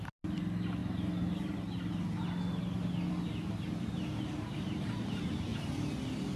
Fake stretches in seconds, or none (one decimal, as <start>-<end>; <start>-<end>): 0.0-0.8; 3.8-5.5